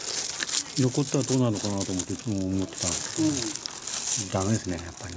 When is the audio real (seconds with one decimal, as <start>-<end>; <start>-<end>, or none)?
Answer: 0.0-2.2; 3.3-5.2

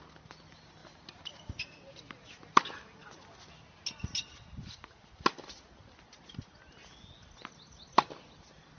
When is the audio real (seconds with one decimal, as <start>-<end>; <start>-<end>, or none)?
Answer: 0.0-8.8

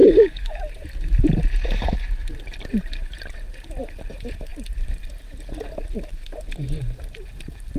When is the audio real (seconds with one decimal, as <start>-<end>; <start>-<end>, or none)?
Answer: 0.6-7.8

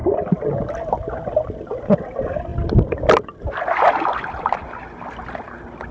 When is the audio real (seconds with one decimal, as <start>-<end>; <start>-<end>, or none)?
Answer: 0.0-2.5

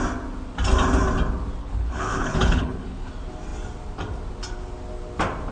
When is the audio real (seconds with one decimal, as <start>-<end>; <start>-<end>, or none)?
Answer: 0.0-1.6; 3.1-5.5

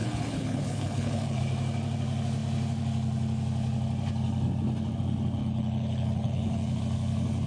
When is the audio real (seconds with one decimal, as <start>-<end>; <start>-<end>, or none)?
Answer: 1.4-5.4; 6.8-7.5

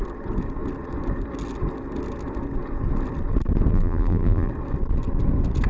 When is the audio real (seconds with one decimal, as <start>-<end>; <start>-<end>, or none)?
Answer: 0.0-3.7; 4.5-5.7